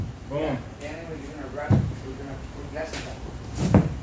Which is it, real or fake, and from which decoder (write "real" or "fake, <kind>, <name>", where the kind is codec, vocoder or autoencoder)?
real